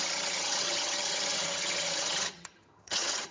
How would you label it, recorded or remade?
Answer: remade